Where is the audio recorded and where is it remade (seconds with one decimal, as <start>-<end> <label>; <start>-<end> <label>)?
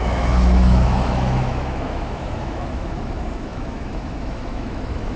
0.0-5.2 remade